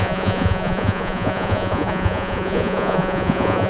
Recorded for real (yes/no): no